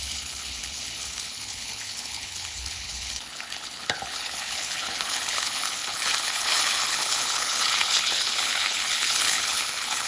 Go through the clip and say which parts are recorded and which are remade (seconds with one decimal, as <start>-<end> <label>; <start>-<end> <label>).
0.0-10.1 remade